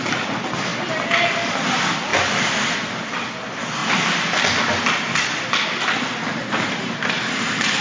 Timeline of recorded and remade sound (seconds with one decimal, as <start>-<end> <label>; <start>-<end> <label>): 0.0-7.8 recorded